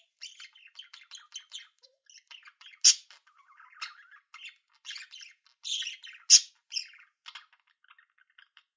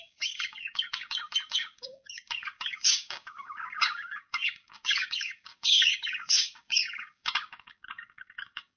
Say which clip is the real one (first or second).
first